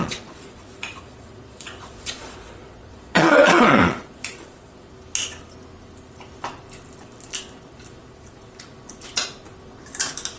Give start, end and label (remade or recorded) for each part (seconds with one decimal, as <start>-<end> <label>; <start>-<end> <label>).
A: 0.0-4.9 remade; 4.9-10.4 recorded